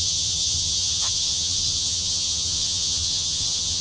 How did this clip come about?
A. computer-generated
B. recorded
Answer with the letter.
A